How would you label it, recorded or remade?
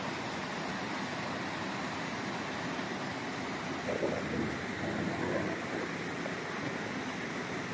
recorded